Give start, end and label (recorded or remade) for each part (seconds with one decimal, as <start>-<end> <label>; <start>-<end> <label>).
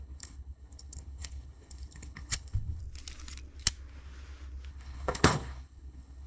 0.0-2.8 remade; 2.8-4.7 recorded; 4.7-6.3 remade